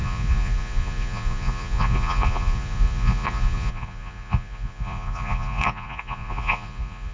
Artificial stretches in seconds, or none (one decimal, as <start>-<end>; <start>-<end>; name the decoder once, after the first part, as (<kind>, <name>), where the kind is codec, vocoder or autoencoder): 0.0-7.1 (vocoder, Vocos)